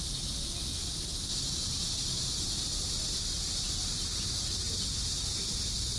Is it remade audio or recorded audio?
recorded